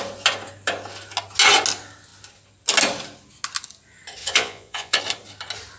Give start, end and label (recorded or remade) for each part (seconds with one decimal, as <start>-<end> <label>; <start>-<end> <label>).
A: 0.0-4.2 recorded; 4.2-5.0 remade; 5.0-5.8 recorded